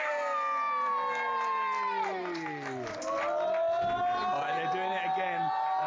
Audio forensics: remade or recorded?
recorded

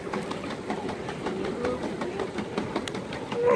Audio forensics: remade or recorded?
recorded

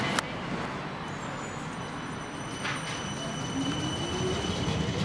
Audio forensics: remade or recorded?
recorded